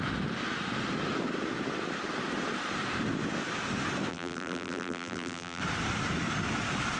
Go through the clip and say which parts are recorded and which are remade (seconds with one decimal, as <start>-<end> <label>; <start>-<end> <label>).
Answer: 0.0-4.1 recorded; 4.1-5.6 remade; 5.6-7.0 recorded